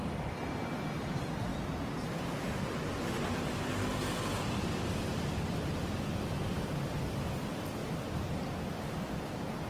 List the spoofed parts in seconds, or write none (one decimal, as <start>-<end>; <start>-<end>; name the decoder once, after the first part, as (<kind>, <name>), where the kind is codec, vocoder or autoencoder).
none